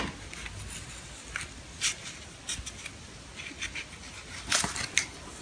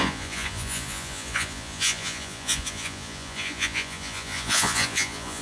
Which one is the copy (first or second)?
second